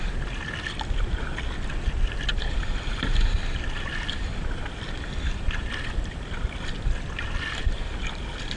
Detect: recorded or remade recorded